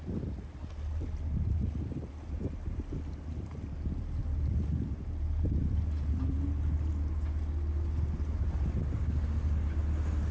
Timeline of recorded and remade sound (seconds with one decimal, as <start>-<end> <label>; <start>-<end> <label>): 0.0-10.3 recorded